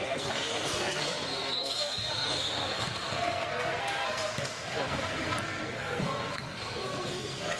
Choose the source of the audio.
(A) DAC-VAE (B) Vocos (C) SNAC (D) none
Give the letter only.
C